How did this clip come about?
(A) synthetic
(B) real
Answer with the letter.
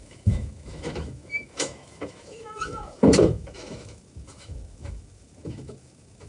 A